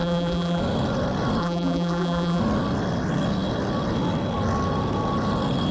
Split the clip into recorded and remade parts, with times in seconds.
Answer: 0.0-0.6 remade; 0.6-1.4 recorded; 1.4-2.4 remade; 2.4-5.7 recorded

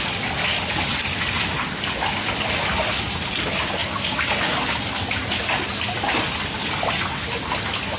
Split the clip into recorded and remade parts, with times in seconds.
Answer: 0.0-8.0 recorded

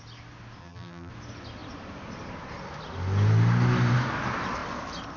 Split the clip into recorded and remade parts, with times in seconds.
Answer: 0.0-0.6 recorded; 0.6-1.1 remade; 1.1-5.2 recorded

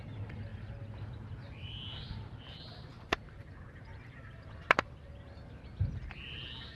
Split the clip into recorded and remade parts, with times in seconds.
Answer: 0.0-6.8 recorded